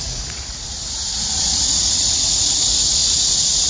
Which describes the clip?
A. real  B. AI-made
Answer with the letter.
B